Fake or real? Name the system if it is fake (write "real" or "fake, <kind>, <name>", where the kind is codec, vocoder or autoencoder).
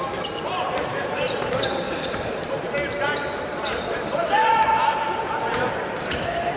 fake, vocoder, BigVGAN v2